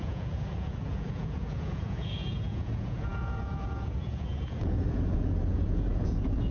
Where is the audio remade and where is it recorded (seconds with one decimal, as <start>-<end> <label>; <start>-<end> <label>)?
0.0-6.5 remade